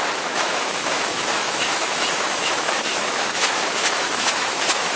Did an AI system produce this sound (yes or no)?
yes